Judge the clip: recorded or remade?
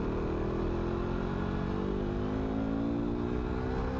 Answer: recorded